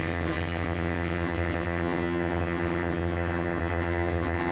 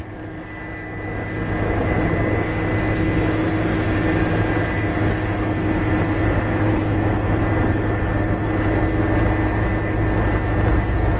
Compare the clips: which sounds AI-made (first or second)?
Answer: first